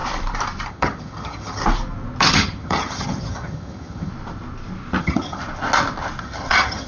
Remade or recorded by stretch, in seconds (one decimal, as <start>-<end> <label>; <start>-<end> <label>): 0.0-0.7 recorded; 0.7-1.6 remade; 1.6-2.2 recorded; 2.2-4.1 remade; 4.1-5.0 recorded; 5.0-5.4 remade; 5.4-6.2 recorded; 6.2-6.9 remade